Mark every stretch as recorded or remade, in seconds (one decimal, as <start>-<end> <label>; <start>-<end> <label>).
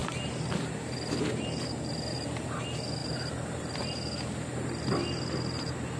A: 0.0-3.0 recorded; 3.0-3.8 remade; 3.8-6.0 recorded